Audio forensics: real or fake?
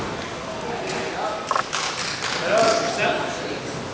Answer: real